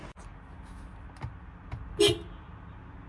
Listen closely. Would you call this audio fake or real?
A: real